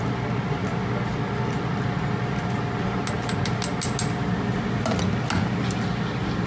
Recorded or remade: recorded